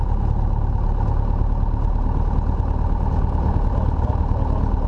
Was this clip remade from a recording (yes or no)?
no